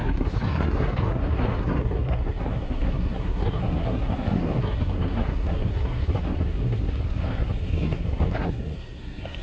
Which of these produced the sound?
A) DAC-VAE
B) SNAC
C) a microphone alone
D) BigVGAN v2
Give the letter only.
B